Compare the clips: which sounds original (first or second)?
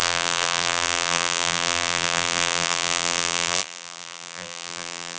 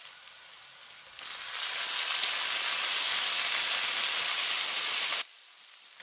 second